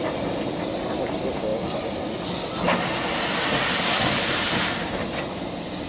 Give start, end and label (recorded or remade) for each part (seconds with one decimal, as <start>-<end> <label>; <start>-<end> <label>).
0.0-5.9 recorded